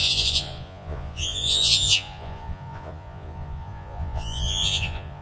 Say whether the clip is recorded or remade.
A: remade